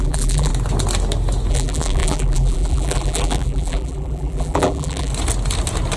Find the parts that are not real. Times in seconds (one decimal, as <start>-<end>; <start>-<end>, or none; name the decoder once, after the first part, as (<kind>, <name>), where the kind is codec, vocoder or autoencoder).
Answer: 0.0-0.5 (vocoder, BigVGAN v2); 1.5-5.1